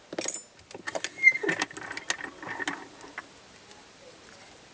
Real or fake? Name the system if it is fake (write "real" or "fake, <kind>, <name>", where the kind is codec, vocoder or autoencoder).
real